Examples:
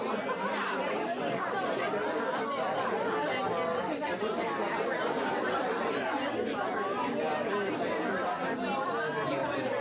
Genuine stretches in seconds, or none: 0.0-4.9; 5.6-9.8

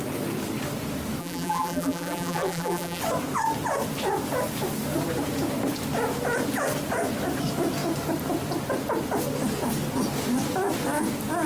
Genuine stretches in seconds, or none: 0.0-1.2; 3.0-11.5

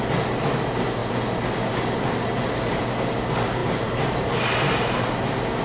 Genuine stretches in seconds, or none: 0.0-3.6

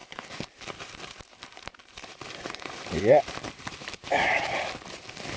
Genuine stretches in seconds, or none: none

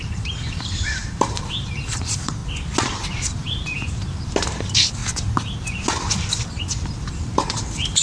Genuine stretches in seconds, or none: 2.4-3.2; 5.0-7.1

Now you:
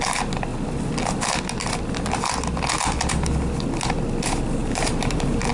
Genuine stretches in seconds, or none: 0.0-4.6

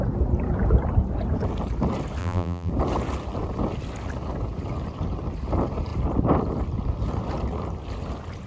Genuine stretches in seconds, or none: 0.0-2.2; 2.7-8.5

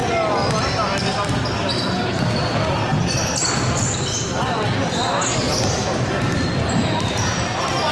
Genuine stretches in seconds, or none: 0.0-5.3